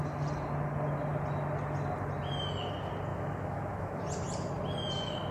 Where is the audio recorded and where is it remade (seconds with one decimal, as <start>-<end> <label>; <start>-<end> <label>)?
0.0-3.1 recorded; 3.1-4.0 remade; 4.0-5.3 recorded